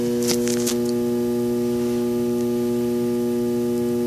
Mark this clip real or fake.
real